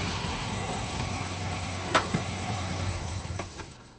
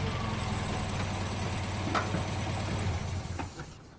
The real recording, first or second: second